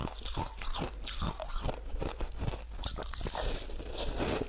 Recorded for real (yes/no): yes